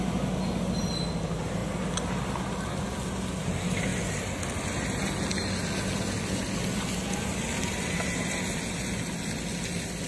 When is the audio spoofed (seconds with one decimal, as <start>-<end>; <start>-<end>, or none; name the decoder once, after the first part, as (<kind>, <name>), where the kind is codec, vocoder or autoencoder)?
none